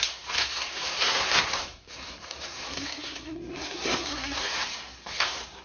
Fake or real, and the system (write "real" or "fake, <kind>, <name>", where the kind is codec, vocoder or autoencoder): fake, codec, SNAC